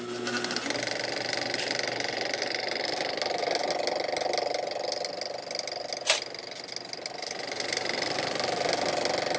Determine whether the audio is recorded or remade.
recorded